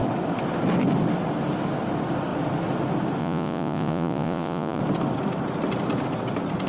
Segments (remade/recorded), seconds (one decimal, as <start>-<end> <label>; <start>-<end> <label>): 0.0-3.2 recorded; 3.2-4.8 remade; 4.8-6.7 recorded